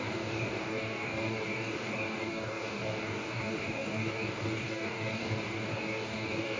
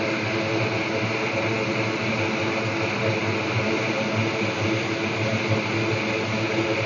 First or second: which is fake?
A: first